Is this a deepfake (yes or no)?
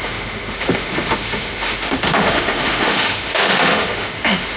yes